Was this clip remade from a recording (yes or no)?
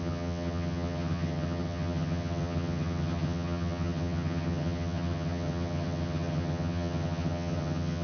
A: yes